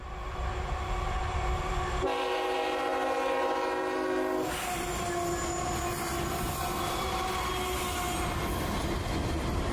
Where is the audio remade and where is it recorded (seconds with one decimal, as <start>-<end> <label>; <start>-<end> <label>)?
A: 0.0-9.7 recorded